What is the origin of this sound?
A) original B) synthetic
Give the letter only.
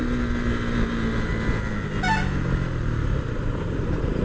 A